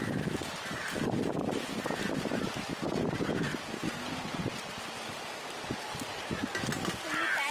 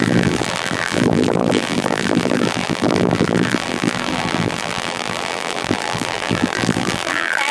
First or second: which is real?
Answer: first